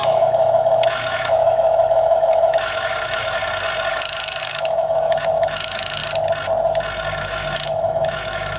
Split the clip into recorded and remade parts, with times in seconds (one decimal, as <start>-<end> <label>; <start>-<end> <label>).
0.0-3.4 remade; 3.4-3.9 recorded; 3.9-6.0 remade; 6.0-7.2 recorded; 7.2-8.6 remade